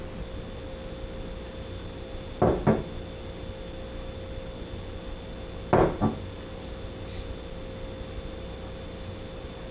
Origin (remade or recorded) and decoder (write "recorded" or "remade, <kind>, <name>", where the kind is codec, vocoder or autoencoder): recorded